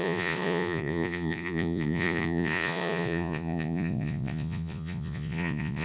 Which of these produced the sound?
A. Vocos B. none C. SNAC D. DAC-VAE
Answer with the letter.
A